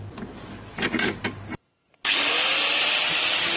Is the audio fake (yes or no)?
no